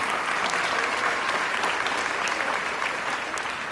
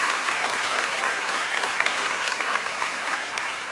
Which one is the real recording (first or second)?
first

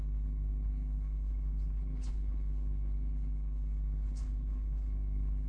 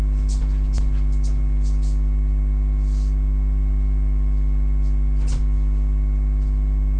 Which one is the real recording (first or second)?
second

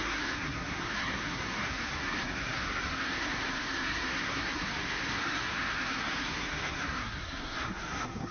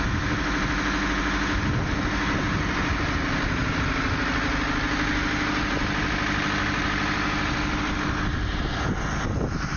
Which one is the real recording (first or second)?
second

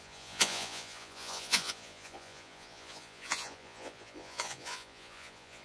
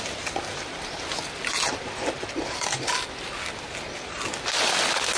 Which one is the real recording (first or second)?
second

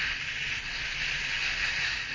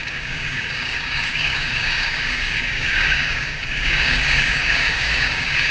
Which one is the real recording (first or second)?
first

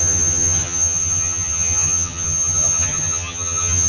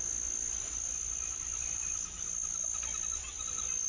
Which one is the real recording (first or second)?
second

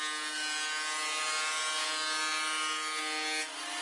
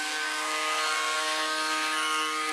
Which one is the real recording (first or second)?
first